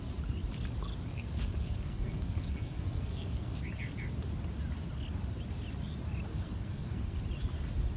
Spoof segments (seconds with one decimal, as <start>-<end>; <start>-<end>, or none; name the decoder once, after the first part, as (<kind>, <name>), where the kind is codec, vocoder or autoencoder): 1.1-3.6 (codec, SNAC); 6.3-7.2